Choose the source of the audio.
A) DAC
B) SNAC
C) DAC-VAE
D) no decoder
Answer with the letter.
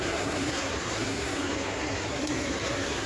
B